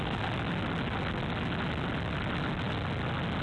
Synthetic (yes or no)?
no